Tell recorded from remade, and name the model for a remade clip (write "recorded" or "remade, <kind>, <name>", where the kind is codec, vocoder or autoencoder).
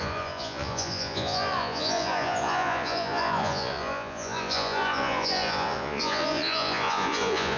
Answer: remade, vocoder, Vocos